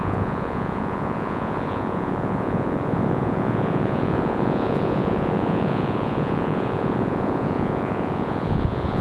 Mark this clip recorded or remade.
remade